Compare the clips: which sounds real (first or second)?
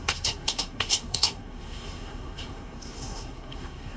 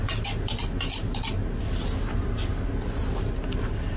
second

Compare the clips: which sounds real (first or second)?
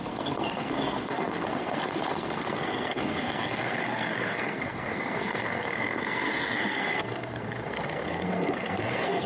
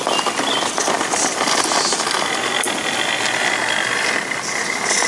second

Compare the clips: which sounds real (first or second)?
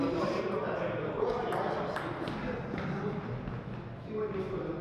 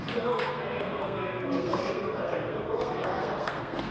first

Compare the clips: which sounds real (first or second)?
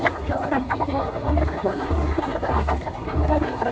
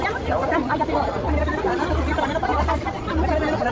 second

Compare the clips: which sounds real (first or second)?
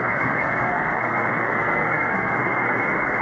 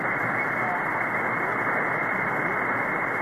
second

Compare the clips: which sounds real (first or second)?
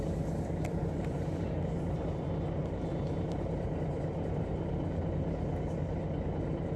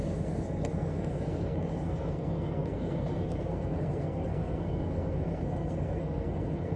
first